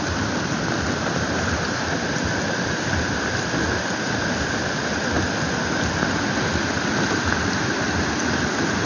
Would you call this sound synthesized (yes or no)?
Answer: no